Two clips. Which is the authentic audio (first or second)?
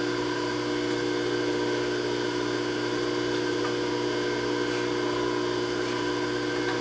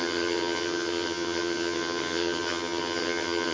first